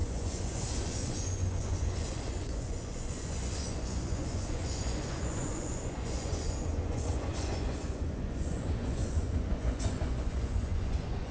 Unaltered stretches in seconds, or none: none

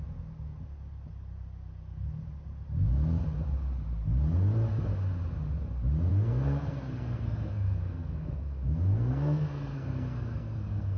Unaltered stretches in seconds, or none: 0.0-6.1

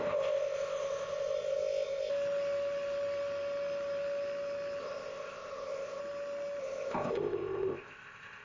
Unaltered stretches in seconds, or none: 2.1-4.8; 6.0-6.6

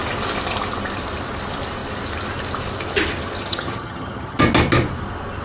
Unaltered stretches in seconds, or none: 0.0-3.4; 4.4-5.4

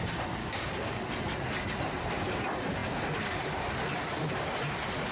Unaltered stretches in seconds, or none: 0.0-0.4; 1.0-5.1

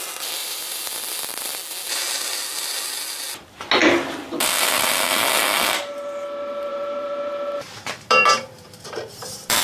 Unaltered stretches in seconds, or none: 0.0-0.4; 1.0-6.7